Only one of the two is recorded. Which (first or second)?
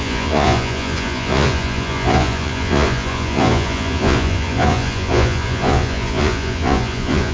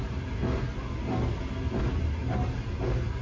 second